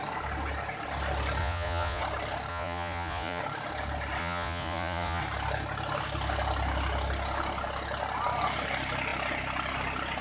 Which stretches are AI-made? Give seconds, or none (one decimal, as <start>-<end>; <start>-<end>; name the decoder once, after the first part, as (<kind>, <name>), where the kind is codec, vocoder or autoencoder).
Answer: 1.4-2.0 (vocoder, Vocos); 2.5-3.4; 4.2-5.2